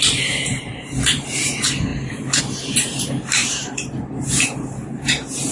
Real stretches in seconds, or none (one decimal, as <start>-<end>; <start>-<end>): 1.9-2.4